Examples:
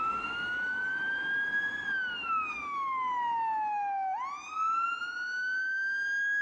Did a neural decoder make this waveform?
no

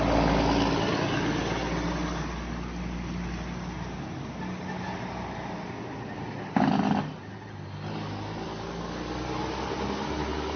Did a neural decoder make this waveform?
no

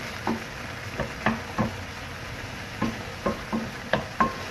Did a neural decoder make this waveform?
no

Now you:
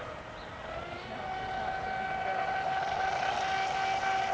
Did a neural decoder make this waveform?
no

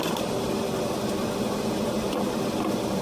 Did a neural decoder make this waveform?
no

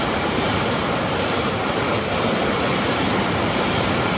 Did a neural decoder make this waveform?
yes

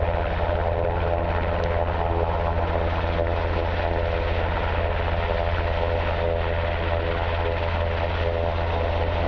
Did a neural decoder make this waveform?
no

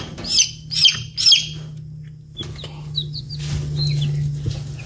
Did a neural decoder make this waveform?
no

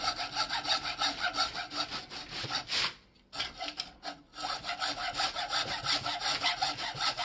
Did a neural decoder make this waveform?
no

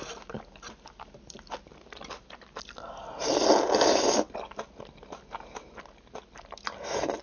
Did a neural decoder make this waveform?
no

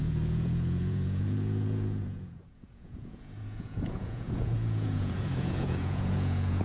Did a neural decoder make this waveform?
yes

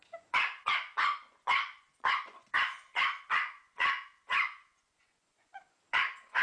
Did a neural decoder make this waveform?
yes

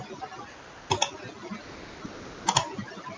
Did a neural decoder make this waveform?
no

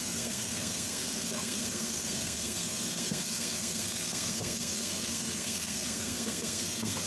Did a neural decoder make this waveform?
yes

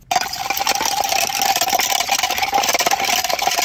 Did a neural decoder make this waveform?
no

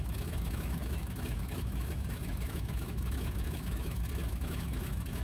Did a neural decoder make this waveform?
yes